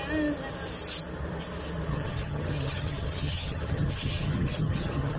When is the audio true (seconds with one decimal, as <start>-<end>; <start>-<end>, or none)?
0.0-1.9